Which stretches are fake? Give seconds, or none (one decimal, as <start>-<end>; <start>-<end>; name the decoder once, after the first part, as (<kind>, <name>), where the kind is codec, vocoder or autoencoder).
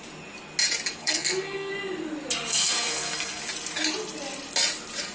1.0-1.7 (codec, SNAC); 2.5-3.4